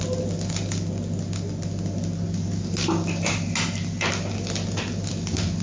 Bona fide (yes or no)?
yes